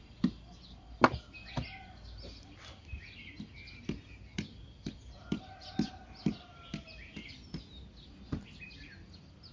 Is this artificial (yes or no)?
no